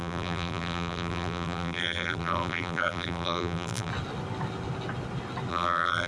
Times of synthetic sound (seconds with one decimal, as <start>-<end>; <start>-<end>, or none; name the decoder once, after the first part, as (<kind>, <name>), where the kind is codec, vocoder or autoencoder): 0.0-3.9 (vocoder, BigVGAN v2); 5.5-6.1